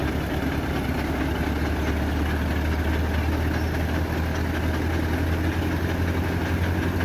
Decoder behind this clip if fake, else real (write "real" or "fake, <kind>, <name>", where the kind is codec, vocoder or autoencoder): real